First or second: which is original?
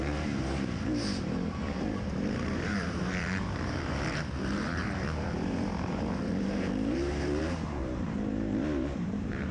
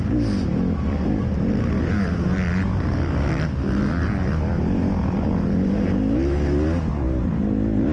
second